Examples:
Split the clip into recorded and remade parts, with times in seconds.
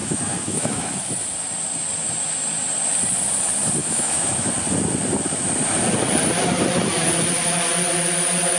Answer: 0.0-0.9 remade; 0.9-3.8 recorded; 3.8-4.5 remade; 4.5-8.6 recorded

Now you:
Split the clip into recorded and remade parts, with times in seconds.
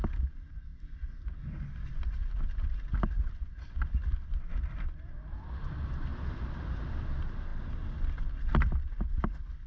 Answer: 0.0-9.7 recorded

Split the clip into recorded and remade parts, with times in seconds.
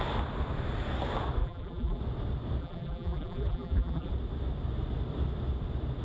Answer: 0.0-1.4 recorded; 1.4-2.0 remade; 2.0-2.6 recorded; 2.6-4.1 remade; 4.1-6.0 recorded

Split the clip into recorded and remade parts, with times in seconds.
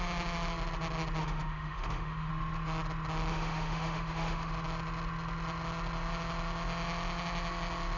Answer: 0.0-1.2 recorded; 1.2-2.3 remade; 2.3-3.3 recorded; 3.3-4.5 remade; 4.5-8.0 recorded